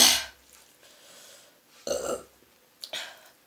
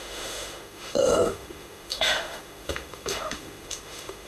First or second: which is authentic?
first